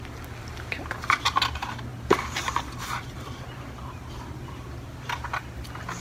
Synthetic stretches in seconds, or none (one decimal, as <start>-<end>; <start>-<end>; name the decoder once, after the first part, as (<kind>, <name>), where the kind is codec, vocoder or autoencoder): none

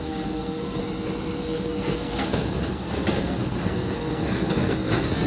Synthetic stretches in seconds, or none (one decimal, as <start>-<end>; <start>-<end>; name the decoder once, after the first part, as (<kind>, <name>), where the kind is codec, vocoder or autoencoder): 0.0-0.8 (codec, SNAC); 1.4-5.3

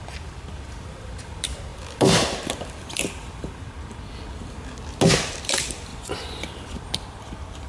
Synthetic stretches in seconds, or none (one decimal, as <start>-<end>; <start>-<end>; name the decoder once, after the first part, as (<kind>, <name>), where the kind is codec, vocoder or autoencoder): 5.9-6.4 (vocoder, Vocos)

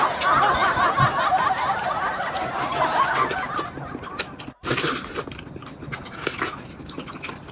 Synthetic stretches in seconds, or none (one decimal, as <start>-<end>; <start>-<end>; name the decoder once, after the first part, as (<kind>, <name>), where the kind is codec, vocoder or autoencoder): none

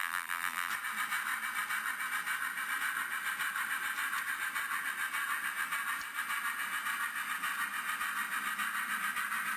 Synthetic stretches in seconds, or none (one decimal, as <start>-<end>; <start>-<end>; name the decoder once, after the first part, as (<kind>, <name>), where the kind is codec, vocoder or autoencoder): 0.0-0.7 (vocoder, BigVGAN v2)